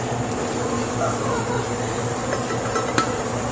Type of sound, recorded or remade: recorded